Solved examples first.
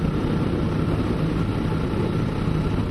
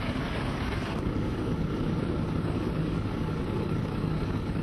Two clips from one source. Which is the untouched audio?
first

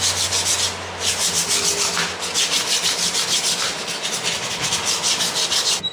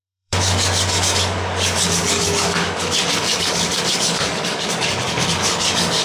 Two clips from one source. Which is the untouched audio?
first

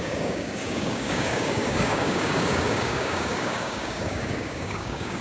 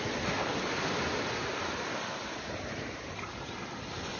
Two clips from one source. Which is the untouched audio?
second